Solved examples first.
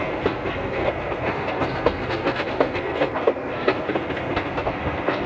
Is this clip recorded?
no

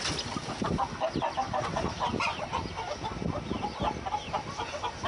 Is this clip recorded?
yes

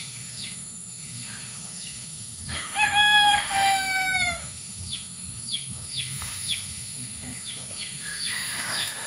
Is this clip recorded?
no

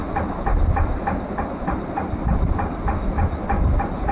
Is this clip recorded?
yes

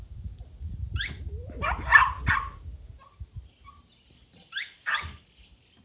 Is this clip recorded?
yes